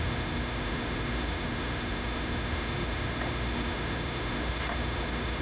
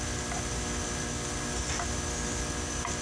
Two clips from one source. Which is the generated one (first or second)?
first